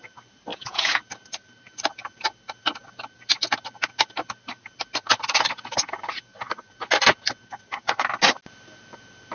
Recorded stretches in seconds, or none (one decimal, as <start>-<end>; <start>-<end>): 0.0-0.5; 1.0-9.3